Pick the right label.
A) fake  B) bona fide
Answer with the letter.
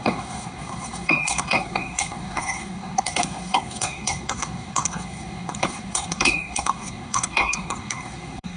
A